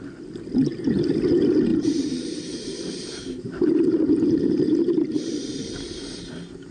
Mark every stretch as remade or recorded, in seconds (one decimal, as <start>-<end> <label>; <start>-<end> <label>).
0.0-1.7 recorded; 1.7-5.7 remade; 5.7-6.7 recorded